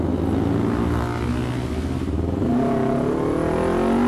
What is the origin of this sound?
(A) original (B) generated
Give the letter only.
A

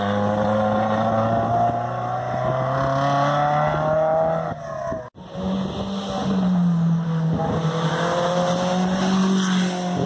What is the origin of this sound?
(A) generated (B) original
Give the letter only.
B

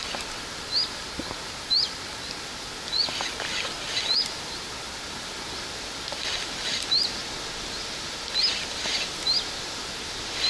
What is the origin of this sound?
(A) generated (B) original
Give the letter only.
B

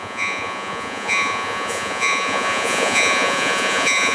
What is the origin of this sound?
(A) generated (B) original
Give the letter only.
A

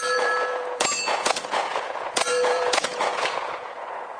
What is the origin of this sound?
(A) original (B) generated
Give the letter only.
B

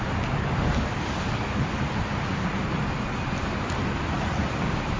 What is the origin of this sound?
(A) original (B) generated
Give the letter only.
A